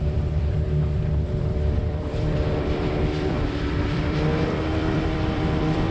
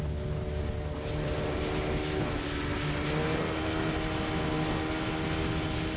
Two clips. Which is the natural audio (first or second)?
second